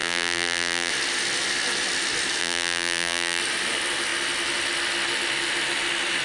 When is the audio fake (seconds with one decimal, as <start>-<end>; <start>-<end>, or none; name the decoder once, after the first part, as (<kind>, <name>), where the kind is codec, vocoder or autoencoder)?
0.0-0.9 (vocoder, BigVGAN v2); 2.4-3.4